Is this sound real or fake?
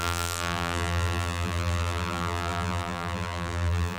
fake